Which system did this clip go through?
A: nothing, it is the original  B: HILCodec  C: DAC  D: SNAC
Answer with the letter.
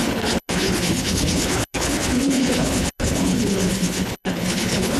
B